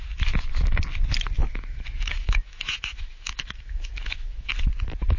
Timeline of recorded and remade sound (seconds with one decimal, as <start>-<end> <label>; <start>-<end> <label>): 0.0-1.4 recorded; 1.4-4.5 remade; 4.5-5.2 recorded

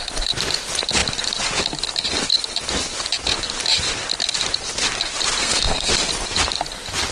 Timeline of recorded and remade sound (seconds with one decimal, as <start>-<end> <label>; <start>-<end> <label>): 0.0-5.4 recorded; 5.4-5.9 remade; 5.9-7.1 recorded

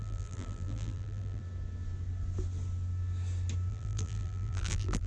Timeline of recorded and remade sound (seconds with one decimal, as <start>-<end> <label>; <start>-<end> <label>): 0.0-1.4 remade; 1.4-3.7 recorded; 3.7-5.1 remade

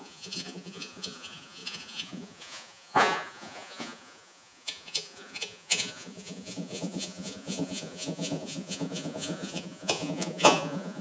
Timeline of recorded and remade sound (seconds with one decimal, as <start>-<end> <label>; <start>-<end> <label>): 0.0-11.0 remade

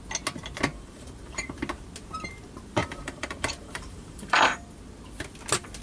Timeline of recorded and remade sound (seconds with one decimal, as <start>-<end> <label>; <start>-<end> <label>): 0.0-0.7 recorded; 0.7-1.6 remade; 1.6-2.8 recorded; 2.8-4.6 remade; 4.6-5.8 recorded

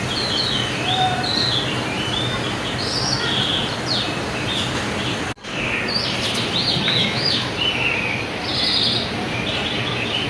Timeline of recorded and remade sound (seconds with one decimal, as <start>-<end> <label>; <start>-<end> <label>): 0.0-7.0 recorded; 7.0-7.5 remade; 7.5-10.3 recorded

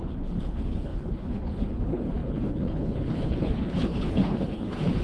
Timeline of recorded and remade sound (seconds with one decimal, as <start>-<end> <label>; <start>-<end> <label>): 0.0-5.0 remade

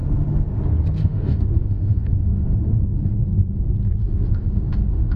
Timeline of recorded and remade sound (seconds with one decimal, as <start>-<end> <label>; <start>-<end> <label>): 0.0-0.6 remade; 0.6-1.0 recorded; 1.0-3.2 remade; 3.2-4.0 recorded; 4.0-5.2 remade